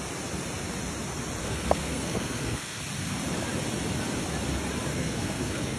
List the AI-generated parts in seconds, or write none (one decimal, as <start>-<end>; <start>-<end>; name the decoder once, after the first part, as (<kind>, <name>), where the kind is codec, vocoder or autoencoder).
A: 1.4-2.8 (codec, SNAC); 4.9-5.8